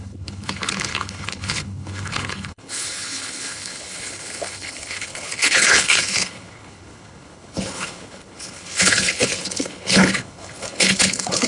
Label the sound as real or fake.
fake